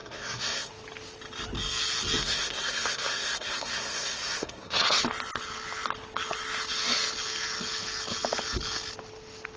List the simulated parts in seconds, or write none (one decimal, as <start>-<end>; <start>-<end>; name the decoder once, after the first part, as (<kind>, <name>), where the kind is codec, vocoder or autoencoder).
0.0-0.7 (codec, SNAC); 2.2-5.0